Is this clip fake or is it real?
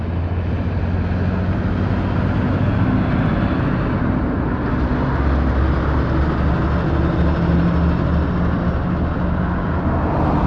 real